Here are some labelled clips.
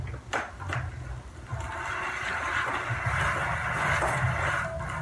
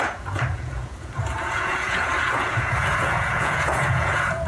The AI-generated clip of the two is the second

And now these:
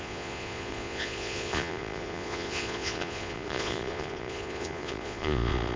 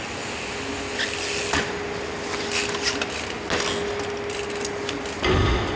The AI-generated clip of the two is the first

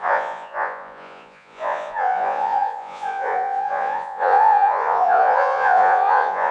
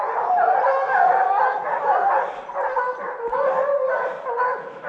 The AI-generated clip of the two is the first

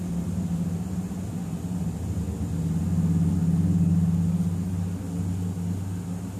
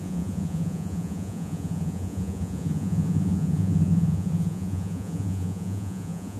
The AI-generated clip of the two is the second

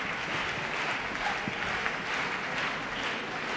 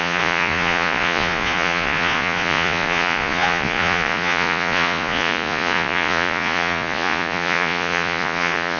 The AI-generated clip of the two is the second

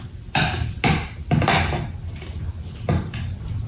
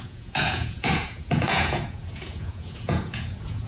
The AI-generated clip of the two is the second